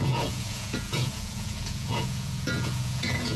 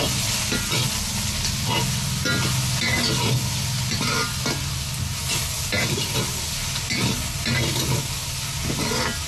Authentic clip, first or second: second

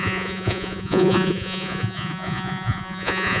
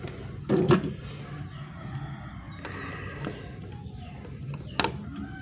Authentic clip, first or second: second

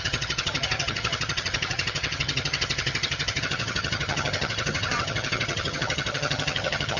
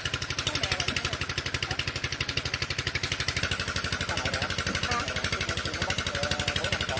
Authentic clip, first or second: second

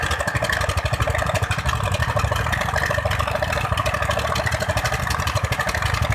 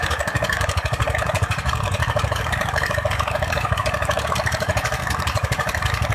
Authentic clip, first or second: first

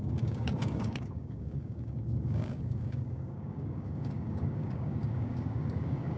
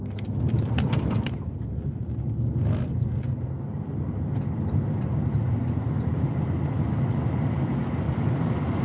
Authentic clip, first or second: second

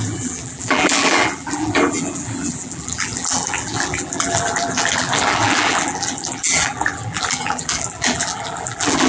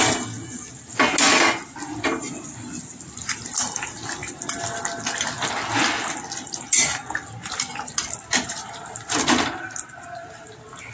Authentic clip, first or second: second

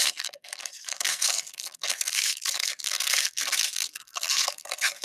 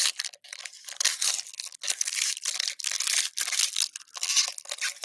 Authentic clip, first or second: second